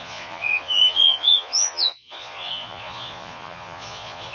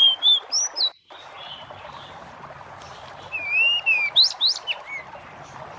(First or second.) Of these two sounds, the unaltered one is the second